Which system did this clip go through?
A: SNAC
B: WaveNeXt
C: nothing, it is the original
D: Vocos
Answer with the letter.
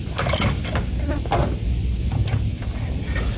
C